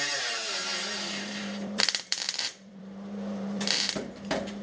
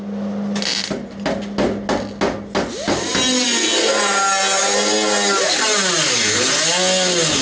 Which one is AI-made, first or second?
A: first